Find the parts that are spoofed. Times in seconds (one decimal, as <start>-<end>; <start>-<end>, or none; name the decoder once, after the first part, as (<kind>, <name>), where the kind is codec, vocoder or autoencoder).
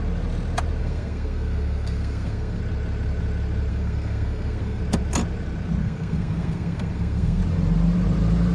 0.8-2.6 (codec, SNAC); 3.7-4.8; 5.8-7.4